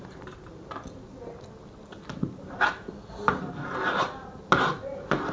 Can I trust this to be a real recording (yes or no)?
yes